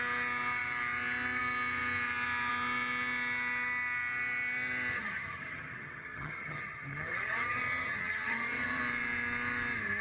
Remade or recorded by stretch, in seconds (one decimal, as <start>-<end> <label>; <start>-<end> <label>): 0.0-4.9 recorded; 4.9-8.8 remade; 8.8-10.0 recorded